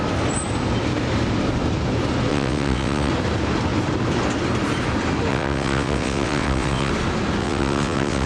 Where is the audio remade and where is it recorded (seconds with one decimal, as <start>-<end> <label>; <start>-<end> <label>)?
0.0-2.3 recorded; 2.3-3.1 remade; 3.1-5.3 recorded; 5.3-6.9 remade; 6.9-7.4 recorded; 7.4-8.3 remade